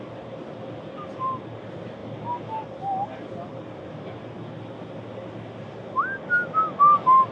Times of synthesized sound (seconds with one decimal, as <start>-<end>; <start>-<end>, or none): none